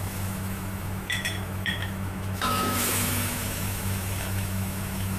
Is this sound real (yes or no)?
no